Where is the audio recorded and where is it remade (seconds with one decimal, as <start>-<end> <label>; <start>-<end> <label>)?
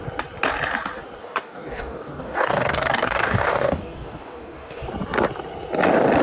0.0-1.2 recorded; 1.2-4.9 remade; 4.9-6.2 recorded